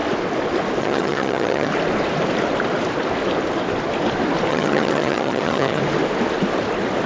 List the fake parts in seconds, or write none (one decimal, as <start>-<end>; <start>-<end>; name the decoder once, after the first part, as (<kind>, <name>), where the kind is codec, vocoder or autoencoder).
0.8-1.7 (vocoder, HiFi-GAN); 4.5-5.8